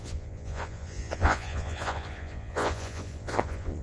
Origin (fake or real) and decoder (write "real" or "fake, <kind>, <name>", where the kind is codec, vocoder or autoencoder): fake, vocoder, Vocos